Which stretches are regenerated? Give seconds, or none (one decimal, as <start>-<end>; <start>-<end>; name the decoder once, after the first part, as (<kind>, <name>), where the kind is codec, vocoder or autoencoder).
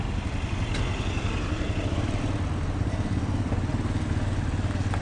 none